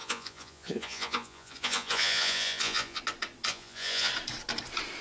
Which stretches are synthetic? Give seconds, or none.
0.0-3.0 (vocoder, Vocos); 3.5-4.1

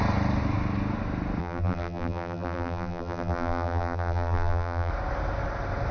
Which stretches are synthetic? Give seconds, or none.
1.4-4.9 (vocoder, BigVGAN v2)

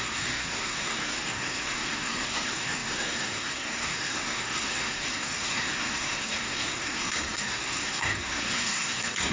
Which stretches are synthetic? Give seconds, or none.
0.0-9.3 (codec, SNAC)